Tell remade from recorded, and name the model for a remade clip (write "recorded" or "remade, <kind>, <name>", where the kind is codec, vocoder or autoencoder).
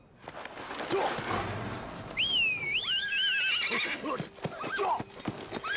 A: recorded